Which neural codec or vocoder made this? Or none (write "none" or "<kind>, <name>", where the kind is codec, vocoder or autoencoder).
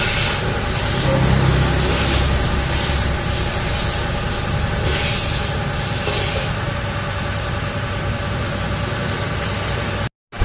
none